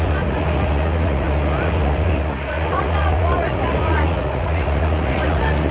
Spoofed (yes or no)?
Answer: yes